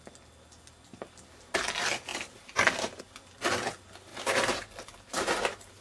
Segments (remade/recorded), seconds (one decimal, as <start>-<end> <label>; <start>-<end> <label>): 0.0-2.1 recorded; 2.1-3.0 remade; 3.0-4.1 recorded; 4.1-5.8 remade